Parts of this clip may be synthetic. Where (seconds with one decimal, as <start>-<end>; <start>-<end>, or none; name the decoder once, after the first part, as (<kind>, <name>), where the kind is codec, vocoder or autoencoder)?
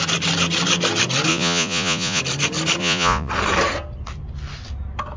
1.3-2.2 (vocoder, Vocos); 2.8-3.3